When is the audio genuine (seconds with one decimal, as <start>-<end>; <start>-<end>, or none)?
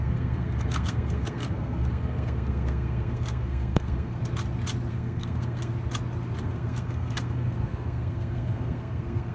4.2-4.9; 5.7-6.4